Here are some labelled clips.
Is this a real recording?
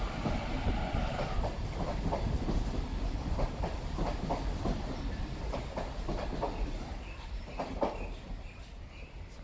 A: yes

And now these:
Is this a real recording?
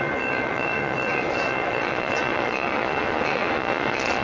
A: no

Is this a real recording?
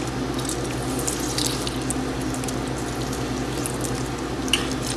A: yes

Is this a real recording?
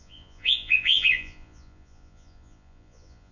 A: no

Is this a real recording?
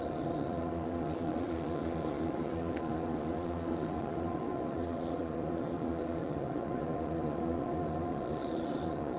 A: no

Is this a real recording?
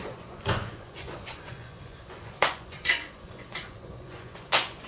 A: no